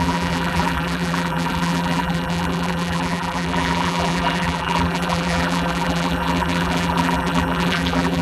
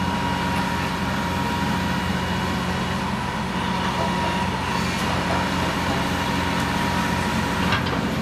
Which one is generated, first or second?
first